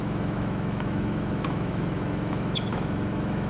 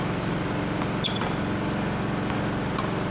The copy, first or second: first